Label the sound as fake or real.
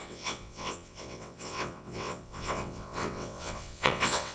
fake